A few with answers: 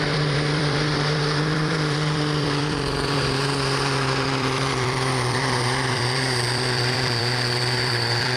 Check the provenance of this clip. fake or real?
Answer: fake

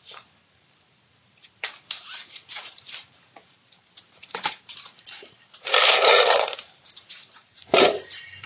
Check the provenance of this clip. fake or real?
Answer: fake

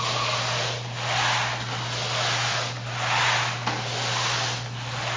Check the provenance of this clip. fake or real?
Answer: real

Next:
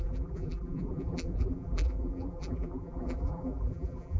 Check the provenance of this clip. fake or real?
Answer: fake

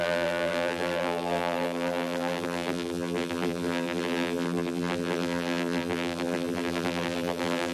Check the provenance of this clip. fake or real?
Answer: fake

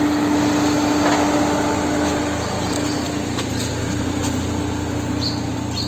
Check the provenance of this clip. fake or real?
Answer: real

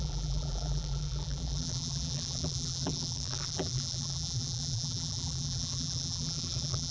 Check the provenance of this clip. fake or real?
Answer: fake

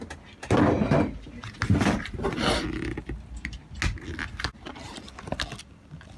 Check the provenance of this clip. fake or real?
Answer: real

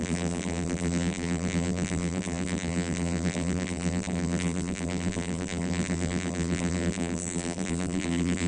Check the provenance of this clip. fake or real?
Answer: fake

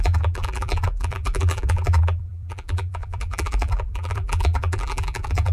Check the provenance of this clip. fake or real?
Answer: fake